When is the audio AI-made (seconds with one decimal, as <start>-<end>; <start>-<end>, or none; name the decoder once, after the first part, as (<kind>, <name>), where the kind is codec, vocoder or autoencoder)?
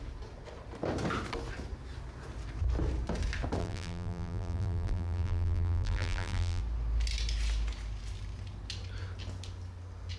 3.6-6.6 (vocoder, BigVGAN v2)